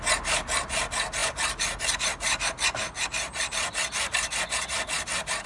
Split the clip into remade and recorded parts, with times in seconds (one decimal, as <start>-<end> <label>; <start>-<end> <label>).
0.0-5.5 recorded